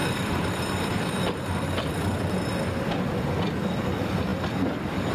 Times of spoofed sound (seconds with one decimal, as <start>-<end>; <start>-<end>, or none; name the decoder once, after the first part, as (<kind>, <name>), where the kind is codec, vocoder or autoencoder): 0.0-2.2 (vocoder, BigVGAN v2); 4.3-5.1